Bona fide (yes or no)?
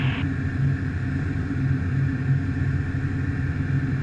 yes